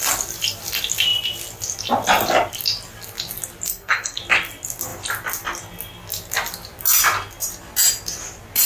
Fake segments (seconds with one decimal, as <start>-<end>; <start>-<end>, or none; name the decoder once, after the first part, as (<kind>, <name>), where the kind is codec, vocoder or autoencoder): 3.7-4.2 (codec, SNAC)

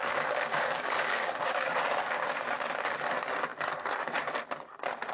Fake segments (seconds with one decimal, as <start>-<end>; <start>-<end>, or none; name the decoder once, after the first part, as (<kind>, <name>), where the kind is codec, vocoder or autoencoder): 0.5-2.8 (codec, DAC)

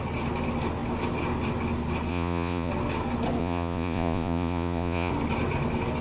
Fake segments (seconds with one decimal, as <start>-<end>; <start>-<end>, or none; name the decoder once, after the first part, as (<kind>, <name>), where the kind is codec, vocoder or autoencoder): 2.1-2.7 (vocoder, Vocos); 3.4-5.1

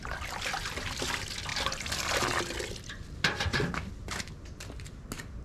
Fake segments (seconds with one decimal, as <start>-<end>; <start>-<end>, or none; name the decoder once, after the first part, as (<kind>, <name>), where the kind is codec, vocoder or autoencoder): none

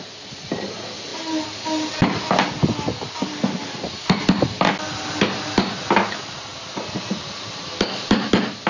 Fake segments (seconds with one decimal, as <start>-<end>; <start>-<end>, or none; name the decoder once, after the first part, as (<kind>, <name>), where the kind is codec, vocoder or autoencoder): none

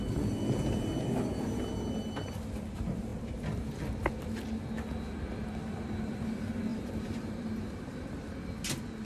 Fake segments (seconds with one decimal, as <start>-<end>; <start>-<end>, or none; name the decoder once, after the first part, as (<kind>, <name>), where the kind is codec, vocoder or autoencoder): 6.7-8.3 (vocoder, BigVGAN v2)

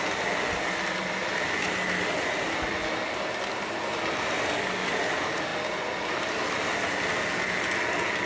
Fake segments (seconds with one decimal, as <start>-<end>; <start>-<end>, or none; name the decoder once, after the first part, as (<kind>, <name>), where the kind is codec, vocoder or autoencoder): none